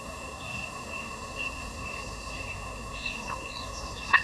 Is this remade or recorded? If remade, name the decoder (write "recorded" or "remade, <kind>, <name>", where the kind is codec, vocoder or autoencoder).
remade, codec, SNAC